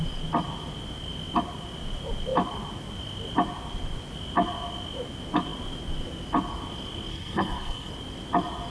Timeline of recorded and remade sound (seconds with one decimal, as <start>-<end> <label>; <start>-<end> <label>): 0.0-7.1 recorded; 7.1-7.9 remade; 7.9-8.7 recorded